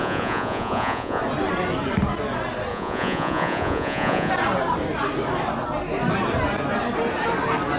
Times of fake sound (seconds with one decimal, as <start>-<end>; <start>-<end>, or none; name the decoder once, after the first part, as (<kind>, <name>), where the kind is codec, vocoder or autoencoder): 0.0-1.2 (vocoder, Vocos); 2.7-4.3